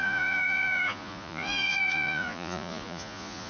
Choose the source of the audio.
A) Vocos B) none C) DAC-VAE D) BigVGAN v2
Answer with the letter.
A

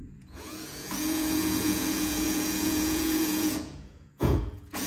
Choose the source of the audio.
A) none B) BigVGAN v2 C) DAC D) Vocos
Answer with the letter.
D